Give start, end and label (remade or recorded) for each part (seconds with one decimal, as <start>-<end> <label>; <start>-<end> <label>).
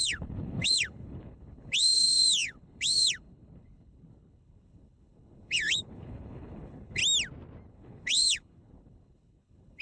0.0-7.0 remade; 7.0-7.7 recorded; 7.7-9.8 remade